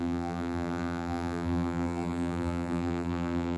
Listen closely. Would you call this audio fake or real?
fake